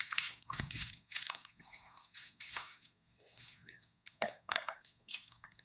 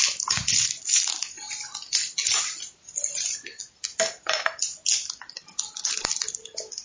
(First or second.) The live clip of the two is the second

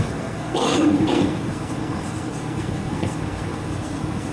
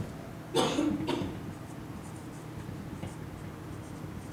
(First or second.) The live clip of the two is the second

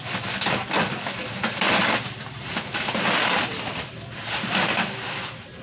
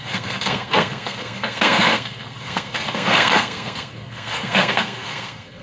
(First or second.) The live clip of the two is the first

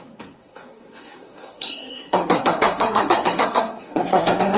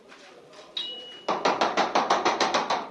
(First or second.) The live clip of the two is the second